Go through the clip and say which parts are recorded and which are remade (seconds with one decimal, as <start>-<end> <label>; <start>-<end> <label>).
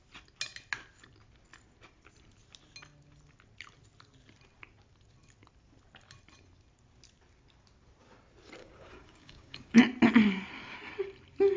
0.0-8.6 recorded; 8.6-9.8 remade; 9.8-11.6 recorded